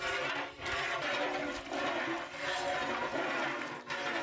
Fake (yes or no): no